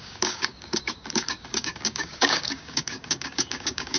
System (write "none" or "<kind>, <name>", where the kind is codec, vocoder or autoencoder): codec, DAC